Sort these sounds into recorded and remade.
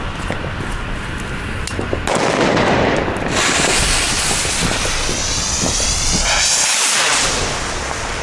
recorded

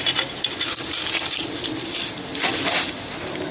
recorded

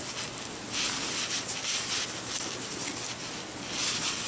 recorded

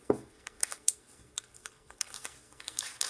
remade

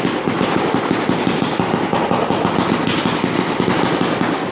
recorded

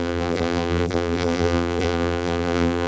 remade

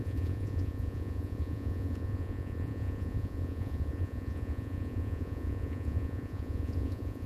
remade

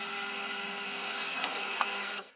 remade